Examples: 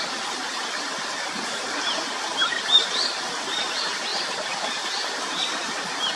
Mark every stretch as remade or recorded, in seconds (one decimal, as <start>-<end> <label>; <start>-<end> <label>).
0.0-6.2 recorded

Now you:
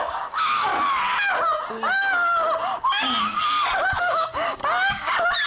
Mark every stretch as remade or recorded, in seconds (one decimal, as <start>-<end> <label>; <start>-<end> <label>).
0.0-0.7 remade; 0.7-4.0 recorded; 4.0-4.6 remade; 4.6-5.5 recorded

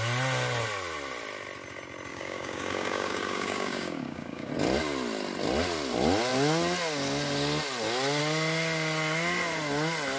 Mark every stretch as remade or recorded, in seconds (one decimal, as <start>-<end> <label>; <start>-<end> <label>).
0.0-2.1 recorded; 2.1-4.5 remade; 4.5-10.2 recorded

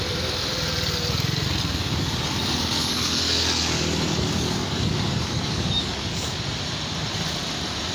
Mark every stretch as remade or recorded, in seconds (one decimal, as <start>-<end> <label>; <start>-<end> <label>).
0.0-1.8 recorded; 1.8-6.4 remade; 6.4-7.9 recorded

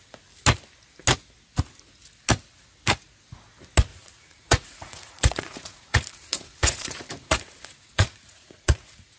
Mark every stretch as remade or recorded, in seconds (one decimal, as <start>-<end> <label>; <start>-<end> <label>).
0.0-3.9 recorded; 3.9-9.2 remade